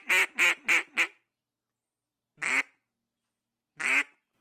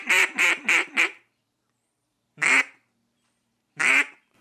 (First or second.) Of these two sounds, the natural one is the first